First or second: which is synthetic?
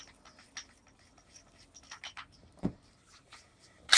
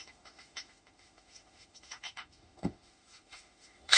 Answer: second